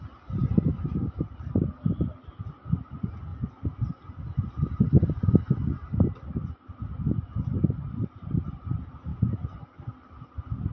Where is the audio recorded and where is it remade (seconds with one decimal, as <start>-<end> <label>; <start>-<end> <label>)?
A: 0.0-0.4 recorded; 0.4-1.2 remade; 1.2-10.7 recorded